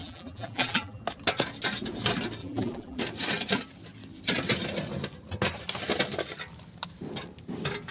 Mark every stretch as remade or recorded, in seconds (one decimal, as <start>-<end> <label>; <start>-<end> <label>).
0.0-1.0 remade; 1.0-2.4 recorded; 2.4-3.0 remade; 3.0-7.9 recorded